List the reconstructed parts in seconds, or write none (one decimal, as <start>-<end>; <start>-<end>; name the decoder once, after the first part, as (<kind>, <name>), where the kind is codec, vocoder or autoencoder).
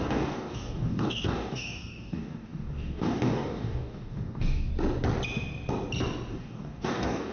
0.0-4.7 (codec, DAC); 6.3-7.3